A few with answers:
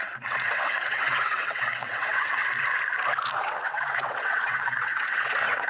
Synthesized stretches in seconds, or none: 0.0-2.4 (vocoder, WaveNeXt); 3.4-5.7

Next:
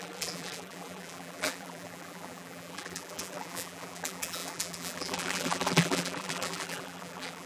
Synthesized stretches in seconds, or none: 0.0-7.5 (vocoder, BigVGAN v2)